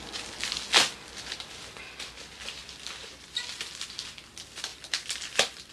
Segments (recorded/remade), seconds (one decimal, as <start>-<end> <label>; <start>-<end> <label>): 0.0-2.6 recorded; 2.6-3.6 remade; 3.6-4.7 recorded; 4.7-5.7 remade